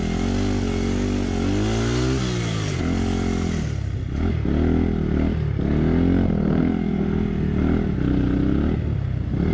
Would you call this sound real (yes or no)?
yes